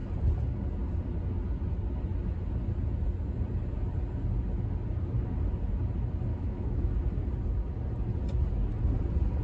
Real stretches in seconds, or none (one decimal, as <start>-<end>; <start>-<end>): 0.0-6.3; 6.9-9.4